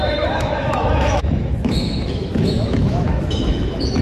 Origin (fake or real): fake